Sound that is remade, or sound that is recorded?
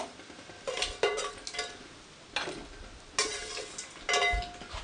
recorded